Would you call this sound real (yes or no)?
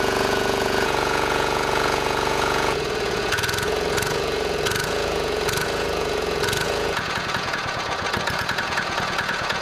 no